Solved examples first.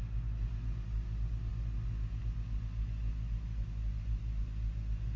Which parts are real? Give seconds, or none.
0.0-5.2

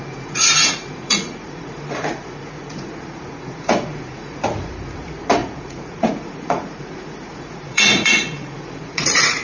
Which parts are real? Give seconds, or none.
none

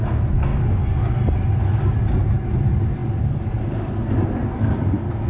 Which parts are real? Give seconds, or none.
0.0-5.3

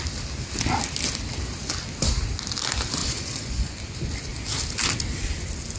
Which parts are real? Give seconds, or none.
0.0-3.0; 3.8-5.8

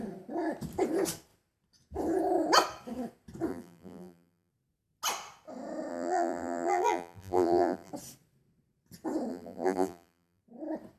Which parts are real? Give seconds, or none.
0.0-3.5; 4.5-5.9; 7.9-9.3; 10.4-11.0

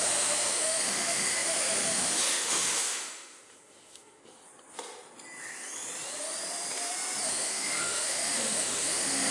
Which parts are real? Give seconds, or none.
4.2-7.3

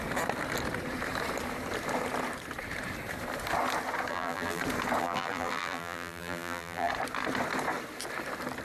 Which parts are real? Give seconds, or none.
0.0-4.1; 4.6-5.0; 6.9-8.6